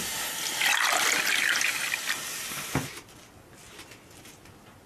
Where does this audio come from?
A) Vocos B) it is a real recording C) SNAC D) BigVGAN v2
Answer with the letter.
B